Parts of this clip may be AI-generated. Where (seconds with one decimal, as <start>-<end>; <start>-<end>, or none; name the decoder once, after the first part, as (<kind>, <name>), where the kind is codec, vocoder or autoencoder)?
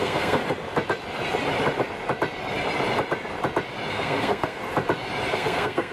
0.0-0.4 (codec, SNAC); 3.9-4.6; 5.3-5.9